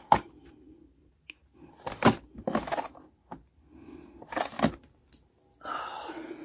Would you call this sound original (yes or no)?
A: yes